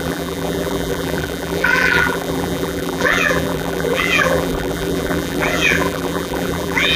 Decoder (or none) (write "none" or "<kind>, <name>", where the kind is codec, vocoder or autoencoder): vocoder, BigVGAN v2